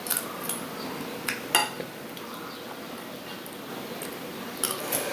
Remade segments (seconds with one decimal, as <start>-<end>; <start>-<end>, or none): none